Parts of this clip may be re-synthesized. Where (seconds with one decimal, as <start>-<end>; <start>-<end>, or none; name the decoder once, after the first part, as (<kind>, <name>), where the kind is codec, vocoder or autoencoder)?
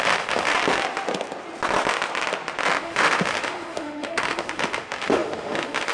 0.0-0.5 (autoencoder, DAC-VAE); 2.8-5.9